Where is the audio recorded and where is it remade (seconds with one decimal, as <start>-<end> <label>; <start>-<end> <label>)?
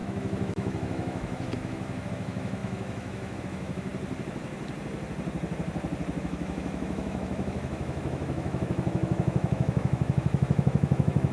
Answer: 0.0-3.9 remade; 3.9-6.2 recorded; 6.2-11.3 remade